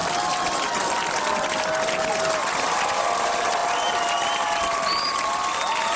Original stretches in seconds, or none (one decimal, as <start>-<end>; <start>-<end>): 0.0-6.0